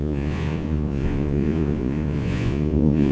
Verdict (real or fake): fake